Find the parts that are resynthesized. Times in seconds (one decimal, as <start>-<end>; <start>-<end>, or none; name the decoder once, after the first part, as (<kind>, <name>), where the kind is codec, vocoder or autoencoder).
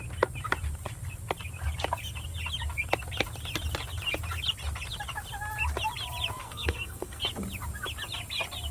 6.4-7.2 (codec, SNAC)